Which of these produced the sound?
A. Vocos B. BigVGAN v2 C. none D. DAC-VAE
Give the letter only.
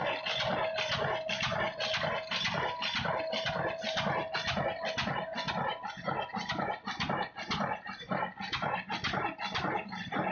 C